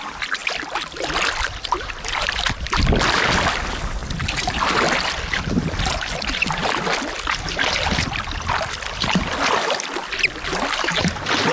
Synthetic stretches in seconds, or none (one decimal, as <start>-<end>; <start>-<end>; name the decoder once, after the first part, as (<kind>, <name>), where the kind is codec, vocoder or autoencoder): none